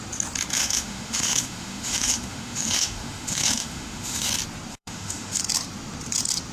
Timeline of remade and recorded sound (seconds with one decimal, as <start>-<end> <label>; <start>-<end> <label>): 0.0-0.5 recorded; 0.5-4.3 remade; 4.3-4.7 recorded; 4.7-5.4 remade; 5.4-6.5 recorded